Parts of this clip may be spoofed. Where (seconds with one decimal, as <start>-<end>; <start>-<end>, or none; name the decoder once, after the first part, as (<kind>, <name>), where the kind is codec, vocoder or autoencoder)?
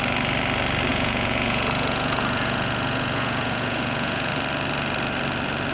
0.9-4.3 (vocoder, Vocos)